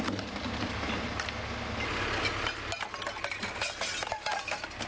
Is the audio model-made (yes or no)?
no